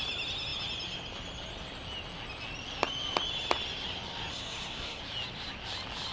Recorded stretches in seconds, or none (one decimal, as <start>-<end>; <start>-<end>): 0.0-4.3; 5.0-6.1